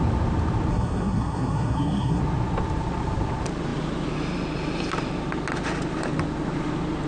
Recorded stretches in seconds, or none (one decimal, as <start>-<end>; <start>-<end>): 0.0-0.7; 2.2-7.1